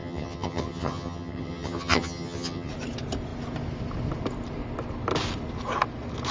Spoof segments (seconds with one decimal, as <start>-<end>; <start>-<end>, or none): 0.0-2.7